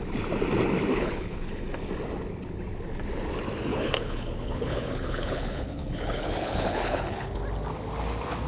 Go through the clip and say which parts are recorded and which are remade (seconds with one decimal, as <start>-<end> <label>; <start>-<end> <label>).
0.0-0.9 recorded; 0.9-1.6 remade; 1.6-3.7 recorded; 3.7-7.4 remade; 7.4-8.5 recorded